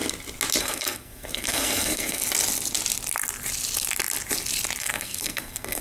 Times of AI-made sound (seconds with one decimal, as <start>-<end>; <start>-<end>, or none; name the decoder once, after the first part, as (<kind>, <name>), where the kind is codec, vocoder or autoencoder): 0.6-2.2 (codec, SNAC); 4.8-5.8